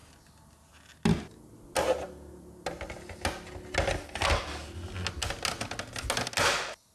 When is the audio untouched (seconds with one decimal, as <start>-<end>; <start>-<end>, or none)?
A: 0.0-6.9